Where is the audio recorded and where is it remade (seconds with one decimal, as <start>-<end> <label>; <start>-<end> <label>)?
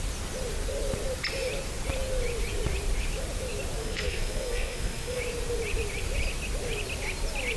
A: 0.0-3.8 recorded; 3.8-5.2 remade; 5.2-7.6 recorded